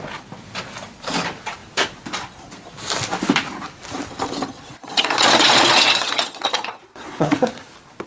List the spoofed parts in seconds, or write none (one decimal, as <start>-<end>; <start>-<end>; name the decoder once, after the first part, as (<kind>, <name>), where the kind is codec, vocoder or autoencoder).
4.5-7.6 (vocoder, Vocos)